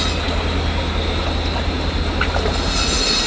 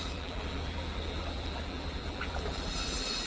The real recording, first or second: first